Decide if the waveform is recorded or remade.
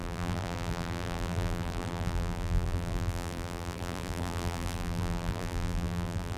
remade